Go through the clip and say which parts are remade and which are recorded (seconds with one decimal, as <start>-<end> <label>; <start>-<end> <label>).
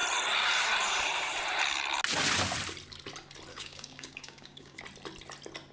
0.0-3.5 recorded; 3.5-4.8 remade; 4.8-5.7 recorded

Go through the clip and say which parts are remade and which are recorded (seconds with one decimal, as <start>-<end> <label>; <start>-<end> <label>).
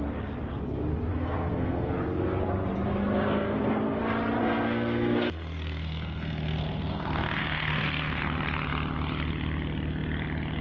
0.0-1.1 recorded; 1.1-1.9 remade; 1.9-3.3 recorded; 3.3-4.0 remade; 4.0-4.4 recorded; 4.4-8.2 remade; 8.2-10.6 recorded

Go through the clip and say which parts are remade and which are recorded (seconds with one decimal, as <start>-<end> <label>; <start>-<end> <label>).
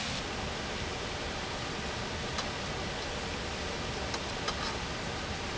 0.0-5.6 recorded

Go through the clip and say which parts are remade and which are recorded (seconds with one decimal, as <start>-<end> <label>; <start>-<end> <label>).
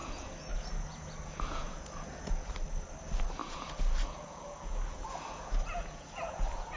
0.0-2.5 remade; 2.5-3.4 recorded; 3.4-6.8 remade